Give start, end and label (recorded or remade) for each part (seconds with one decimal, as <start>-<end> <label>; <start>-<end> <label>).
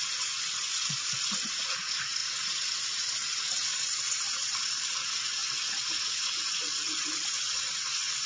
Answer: 0.0-8.3 remade